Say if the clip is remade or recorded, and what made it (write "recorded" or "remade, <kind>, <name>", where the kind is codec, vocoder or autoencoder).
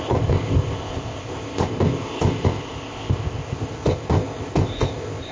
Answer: remade, codec, ZipCodec